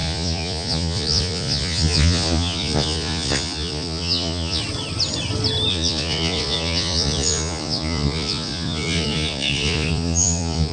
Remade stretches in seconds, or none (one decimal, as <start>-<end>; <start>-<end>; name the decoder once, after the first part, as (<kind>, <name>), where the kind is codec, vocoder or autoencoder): 0.0-4.6 (vocoder, Vocos); 5.7-10.7